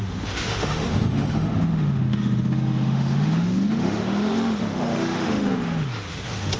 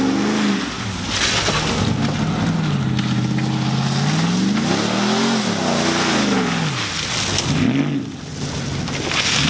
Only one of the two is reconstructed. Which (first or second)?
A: first